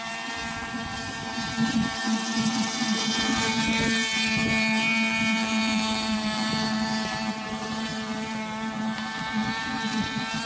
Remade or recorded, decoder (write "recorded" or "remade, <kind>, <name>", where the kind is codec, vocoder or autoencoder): recorded